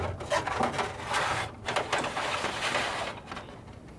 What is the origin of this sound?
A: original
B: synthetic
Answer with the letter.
B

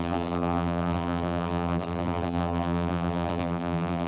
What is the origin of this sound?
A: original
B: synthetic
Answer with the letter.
B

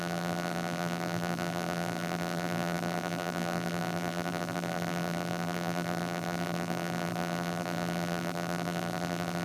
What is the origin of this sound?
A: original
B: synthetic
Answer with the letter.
B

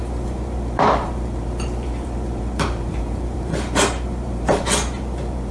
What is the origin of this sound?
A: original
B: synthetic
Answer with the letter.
B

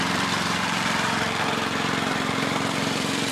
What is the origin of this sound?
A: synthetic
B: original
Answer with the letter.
A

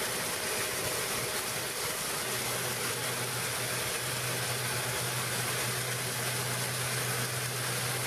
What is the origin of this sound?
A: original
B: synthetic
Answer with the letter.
A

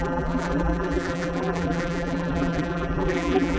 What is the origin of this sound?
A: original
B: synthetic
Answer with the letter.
B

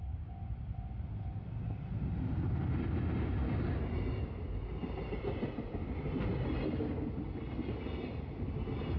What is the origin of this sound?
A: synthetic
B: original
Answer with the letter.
B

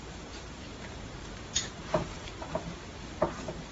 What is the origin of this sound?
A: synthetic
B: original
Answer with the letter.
A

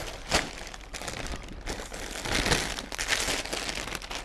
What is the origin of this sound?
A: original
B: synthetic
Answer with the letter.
A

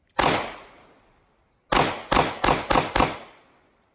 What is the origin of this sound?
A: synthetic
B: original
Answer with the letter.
B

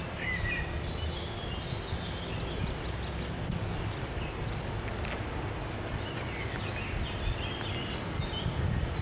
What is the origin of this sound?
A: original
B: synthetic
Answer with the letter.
A